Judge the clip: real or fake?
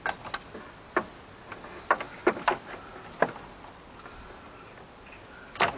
real